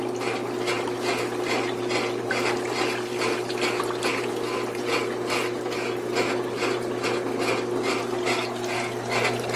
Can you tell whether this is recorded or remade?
recorded